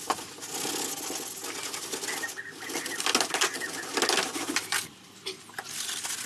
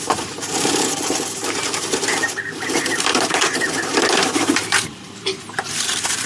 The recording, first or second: first